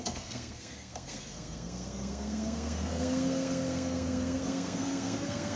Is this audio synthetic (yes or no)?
yes